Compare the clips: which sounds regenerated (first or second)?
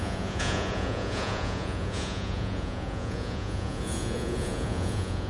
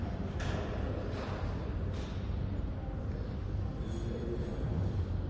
first